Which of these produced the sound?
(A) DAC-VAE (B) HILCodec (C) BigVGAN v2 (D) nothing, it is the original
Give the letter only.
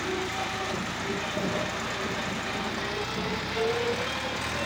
D